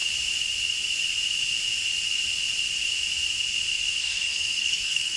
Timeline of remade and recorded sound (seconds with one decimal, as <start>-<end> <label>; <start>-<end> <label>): 0.0-4.0 recorded; 4.0-5.2 remade